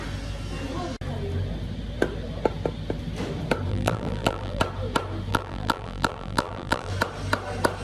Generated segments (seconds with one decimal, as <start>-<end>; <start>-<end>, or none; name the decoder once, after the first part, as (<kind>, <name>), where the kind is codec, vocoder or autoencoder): 3.7-4.6 (vocoder, BigVGAN v2); 5.3-6.9